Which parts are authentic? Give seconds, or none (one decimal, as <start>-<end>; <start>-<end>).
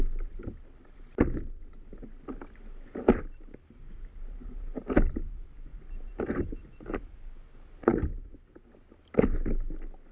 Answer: 0.0-10.1